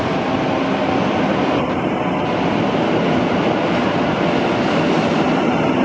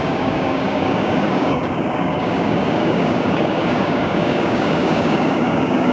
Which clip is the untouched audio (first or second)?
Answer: first